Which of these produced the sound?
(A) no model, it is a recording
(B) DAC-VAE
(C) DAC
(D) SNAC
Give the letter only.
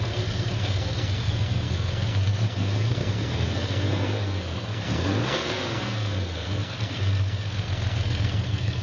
D